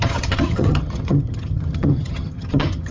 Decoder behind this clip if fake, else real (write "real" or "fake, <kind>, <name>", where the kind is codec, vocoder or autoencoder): fake, vocoder, HiFi-GAN